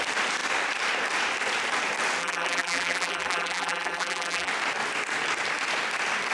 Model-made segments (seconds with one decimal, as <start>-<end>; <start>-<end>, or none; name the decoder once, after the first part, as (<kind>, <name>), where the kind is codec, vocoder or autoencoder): 2.2-4.5 (vocoder, BigVGAN v2)